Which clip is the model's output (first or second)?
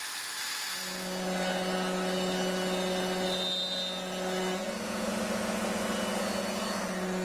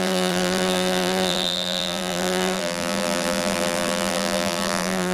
second